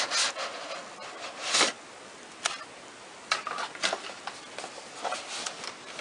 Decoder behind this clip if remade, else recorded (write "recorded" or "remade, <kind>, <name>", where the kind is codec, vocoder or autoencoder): recorded